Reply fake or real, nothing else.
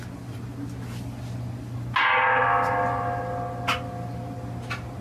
real